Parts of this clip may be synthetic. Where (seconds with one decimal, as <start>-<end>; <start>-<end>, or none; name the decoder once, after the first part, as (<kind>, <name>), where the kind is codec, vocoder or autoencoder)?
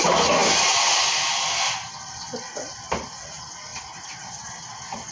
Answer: none